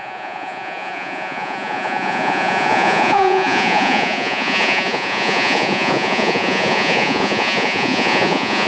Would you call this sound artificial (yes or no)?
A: yes